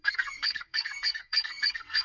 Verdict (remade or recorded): remade